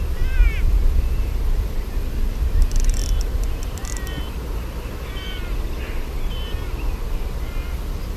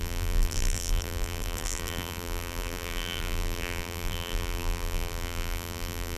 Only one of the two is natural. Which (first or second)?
first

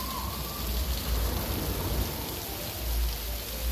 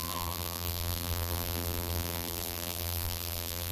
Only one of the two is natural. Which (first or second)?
first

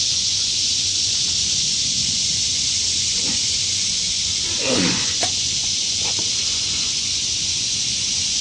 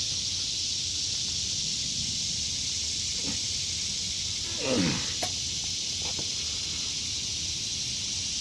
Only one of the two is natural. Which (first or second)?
second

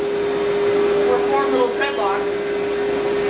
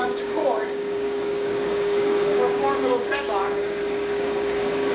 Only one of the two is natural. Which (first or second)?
first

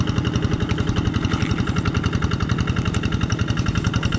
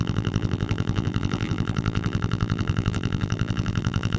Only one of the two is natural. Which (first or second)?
first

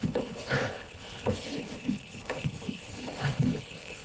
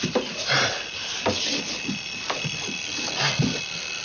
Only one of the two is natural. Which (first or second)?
second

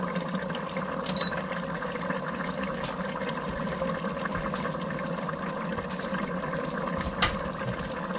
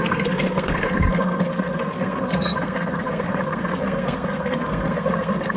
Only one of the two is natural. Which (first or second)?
first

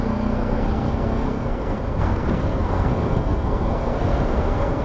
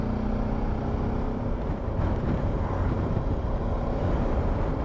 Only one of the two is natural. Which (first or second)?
second